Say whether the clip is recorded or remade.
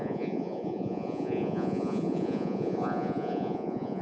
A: remade